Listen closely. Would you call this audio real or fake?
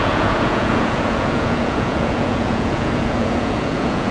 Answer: fake